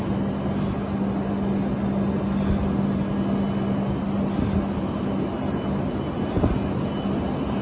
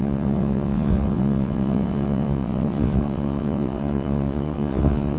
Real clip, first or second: first